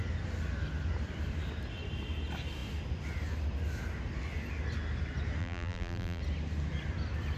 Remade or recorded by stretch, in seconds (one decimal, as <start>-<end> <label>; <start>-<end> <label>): 0.0-5.4 recorded; 5.4-6.2 remade; 6.2-7.4 recorded